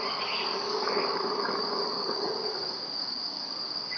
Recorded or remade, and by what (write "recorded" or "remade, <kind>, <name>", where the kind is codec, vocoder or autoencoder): remade, codec, DAC